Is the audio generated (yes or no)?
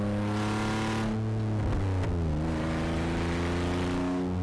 no